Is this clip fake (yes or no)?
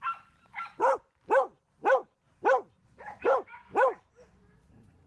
no